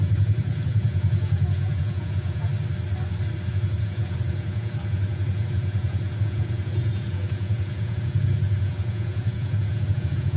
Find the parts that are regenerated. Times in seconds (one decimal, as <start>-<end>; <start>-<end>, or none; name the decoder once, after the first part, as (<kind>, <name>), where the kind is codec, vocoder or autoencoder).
0.0-2.5 (vocoder, Vocos); 3.5-10.4